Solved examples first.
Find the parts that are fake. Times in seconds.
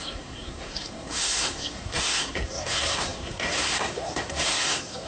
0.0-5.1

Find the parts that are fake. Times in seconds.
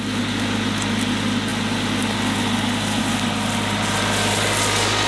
none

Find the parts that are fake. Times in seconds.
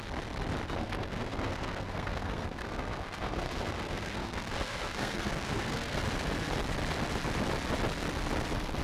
0.8-6.0